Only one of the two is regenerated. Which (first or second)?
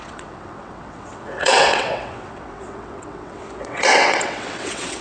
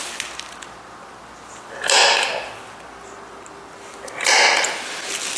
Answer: first